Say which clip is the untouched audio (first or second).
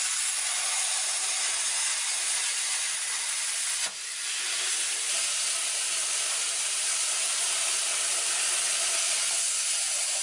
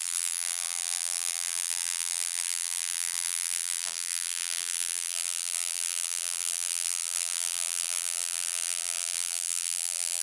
first